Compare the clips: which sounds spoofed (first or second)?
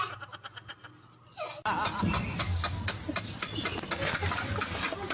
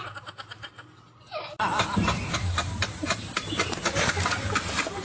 second